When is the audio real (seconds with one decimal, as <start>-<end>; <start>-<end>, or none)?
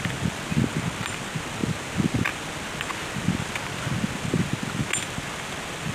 0.0-5.9